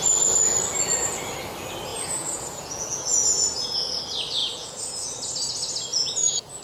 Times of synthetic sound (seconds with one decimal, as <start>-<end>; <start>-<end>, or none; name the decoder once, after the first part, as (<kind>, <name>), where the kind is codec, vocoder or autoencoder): 1.9-4.0 (vocoder, Vocos); 4.4-5.1; 5.9-6.6